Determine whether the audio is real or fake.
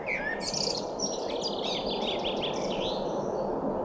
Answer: real